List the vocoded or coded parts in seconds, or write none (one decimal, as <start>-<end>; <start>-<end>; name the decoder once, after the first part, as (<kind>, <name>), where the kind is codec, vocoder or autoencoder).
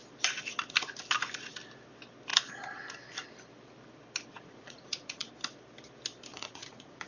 4.3-5.3 (vocoder, Vocos); 6.3-7.1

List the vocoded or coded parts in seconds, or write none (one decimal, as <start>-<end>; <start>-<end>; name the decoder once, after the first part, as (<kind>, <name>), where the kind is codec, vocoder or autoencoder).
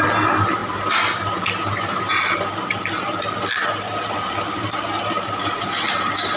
none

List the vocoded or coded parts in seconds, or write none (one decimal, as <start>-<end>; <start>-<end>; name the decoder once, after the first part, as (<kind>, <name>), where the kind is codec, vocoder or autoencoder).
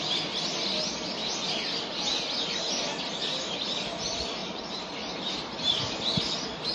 4.4-5.2 (vocoder, BigVGAN v2)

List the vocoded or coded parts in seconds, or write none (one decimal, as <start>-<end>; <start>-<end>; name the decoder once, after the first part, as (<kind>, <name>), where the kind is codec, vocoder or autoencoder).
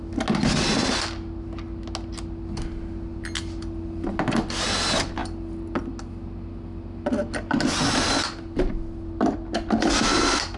none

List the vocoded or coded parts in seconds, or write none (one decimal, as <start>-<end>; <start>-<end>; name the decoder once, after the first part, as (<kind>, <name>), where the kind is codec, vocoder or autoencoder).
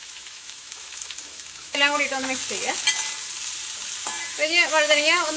0.0-2.4 (autoencoder, DAC-VAE); 4.3-5.4